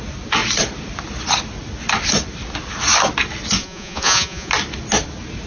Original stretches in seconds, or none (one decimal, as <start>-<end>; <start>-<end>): 0.0-3.6; 4.5-5.5